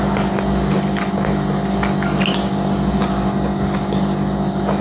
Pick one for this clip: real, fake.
real